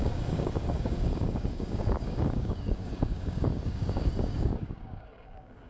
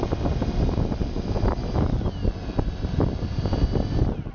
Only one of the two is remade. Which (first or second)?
first